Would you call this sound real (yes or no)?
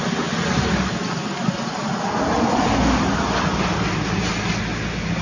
yes